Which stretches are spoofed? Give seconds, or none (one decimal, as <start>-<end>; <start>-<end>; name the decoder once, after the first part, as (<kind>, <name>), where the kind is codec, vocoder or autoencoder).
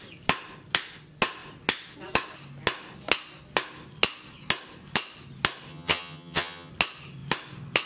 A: 5.7-6.7 (vocoder, HiFi-GAN)